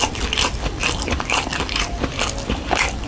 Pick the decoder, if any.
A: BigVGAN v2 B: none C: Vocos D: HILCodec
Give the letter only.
A